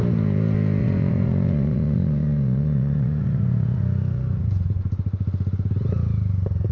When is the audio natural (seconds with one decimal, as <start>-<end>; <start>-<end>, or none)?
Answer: 0.0-0.8; 4.8-6.7